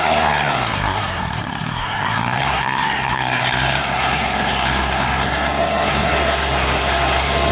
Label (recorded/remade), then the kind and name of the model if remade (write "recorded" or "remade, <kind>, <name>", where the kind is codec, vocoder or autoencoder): remade, codec, SNAC